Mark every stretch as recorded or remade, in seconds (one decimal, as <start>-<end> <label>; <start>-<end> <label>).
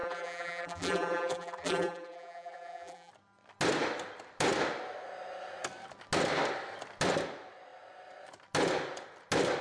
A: 0.0-3.1 remade; 3.1-9.6 recorded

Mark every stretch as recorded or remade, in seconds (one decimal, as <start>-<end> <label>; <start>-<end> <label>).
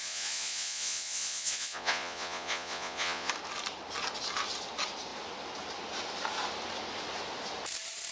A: 0.0-3.3 remade; 3.3-8.1 recorded